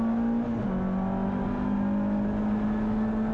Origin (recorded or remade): recorded